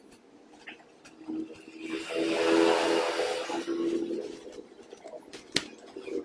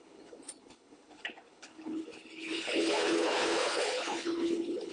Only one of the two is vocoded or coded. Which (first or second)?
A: second